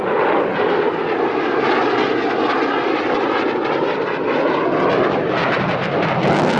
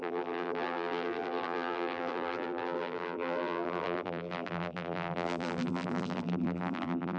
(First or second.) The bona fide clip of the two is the first